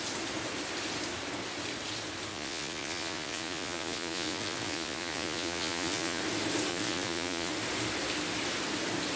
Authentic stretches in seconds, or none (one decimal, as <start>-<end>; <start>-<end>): 0.0-2.3; 6.2-6.7; 7.5-9.2